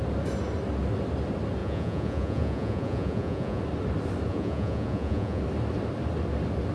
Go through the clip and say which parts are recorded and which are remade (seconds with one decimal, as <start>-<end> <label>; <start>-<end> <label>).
0.0-1.6 recorded; 1.6-3.6 remade; 3.6-4.3 recorded; 4.3-5.4 remade; 5.4-6.7 recorded